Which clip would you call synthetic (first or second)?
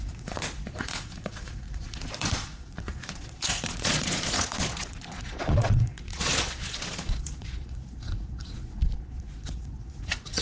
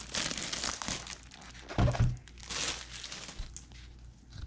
first